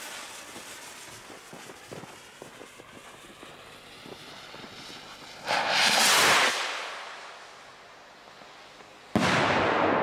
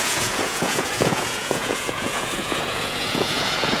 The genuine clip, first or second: first